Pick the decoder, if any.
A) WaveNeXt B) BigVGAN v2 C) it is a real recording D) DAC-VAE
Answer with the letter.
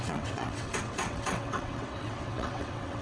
A